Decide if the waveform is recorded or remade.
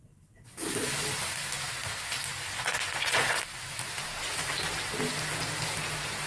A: recorded